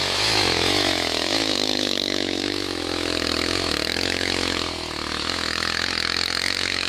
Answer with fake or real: fake